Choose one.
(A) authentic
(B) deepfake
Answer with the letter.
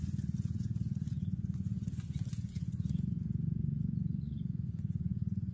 B